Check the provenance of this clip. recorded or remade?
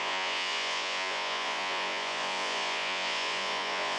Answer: remade